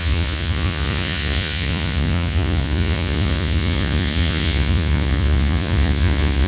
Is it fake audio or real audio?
fake